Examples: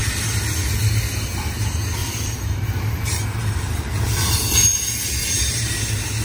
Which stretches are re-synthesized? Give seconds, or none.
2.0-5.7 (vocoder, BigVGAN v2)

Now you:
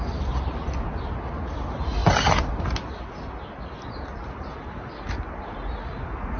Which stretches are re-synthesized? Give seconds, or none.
none

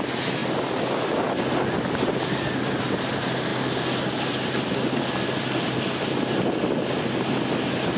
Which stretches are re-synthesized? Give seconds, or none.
none

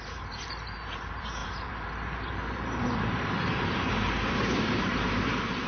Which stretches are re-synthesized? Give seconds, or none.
0.0-5.7 (vocoder, BigVGAN v2)

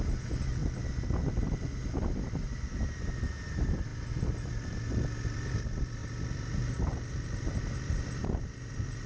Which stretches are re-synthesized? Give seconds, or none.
0.0-0.6 (vocoder, BigVGAN v2); 1.9-3.9; 4.5-9.1